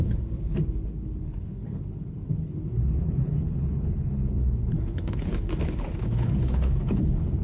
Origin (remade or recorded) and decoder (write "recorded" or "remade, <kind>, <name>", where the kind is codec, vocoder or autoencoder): remade, codec, HILCodec